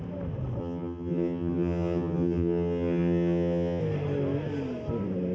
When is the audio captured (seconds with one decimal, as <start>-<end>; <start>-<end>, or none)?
0.0-0.6; 3.8-5.3